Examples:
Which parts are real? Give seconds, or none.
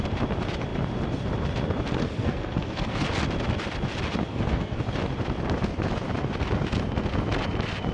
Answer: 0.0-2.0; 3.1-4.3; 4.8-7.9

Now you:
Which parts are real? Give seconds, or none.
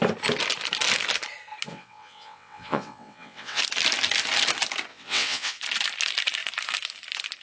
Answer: 0.0-1.7; 3.6-4.9; 5.6-7.4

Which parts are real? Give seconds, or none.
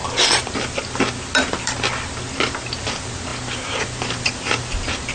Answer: 0.0-2.8